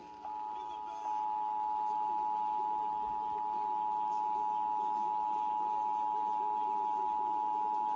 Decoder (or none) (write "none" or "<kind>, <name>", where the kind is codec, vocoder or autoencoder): none